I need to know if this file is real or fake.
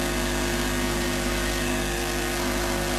fake